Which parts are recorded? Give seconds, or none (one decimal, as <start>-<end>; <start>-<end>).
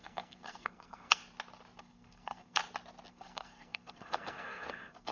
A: 1.2-1.8; 2.6-3.1